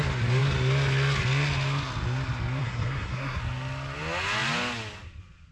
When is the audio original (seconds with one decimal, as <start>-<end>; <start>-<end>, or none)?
0.0-2.6; 3.4-5.5